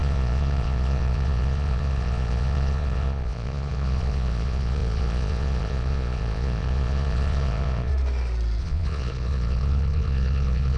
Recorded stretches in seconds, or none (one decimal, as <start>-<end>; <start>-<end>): 7.9-8.6